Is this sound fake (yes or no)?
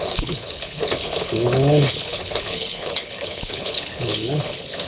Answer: yes